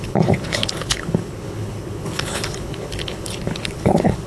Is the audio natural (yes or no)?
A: no